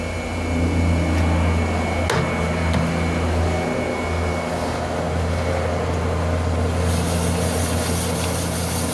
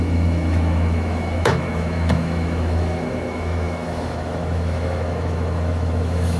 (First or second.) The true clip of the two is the first